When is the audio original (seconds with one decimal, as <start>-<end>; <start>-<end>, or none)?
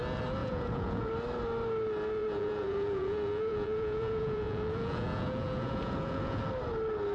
0.0-0.4; 1.1-2.2; 6.4-7.1